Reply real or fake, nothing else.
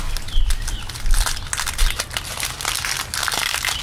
real